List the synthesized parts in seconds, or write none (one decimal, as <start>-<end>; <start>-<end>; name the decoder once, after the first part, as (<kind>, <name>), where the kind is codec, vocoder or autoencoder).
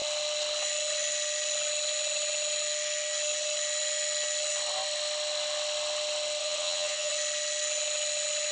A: 6.4-7.1 (vocoder, HiFi-GAN)